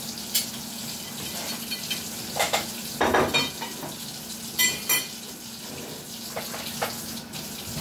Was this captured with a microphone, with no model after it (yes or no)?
yes